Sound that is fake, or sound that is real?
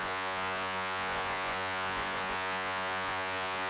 fake